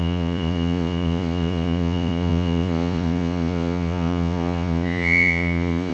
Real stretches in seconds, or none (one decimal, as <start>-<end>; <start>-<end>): none